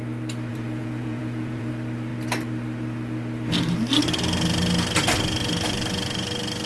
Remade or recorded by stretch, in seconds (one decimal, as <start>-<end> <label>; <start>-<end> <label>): 0.0-0.5 recorded; 0.5-1.7 remade; 1.7-6.7 recorded